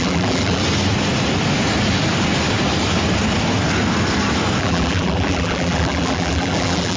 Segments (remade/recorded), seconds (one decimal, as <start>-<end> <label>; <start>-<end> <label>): 0.0-0.6 remade; 0.6-4.6 recorded; 4.6-7.0 remade